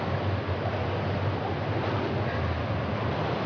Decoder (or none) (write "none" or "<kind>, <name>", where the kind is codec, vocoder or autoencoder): none